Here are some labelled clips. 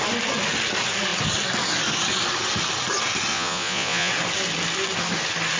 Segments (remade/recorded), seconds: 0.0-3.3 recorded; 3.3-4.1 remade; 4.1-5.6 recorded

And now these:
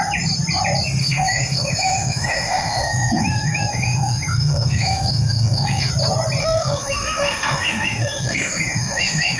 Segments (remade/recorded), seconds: 0.0-1.0 recorded; 1.0-5.9 remade; 5.9-6.4 recorded; 6.4-9.4 remade

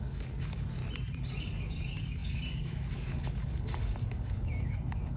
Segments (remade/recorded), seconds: 0.0-0.8 remade; 0.8-1.4 recorded; 1.4-5.2 remade

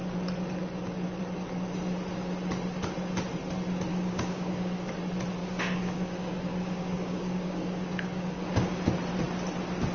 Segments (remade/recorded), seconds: 0.0-3.9 recorded; 3.9-4.9 remade; 4.9-5.4 recorded; 5.4-8.8 remade; 8.8-9.9 recorded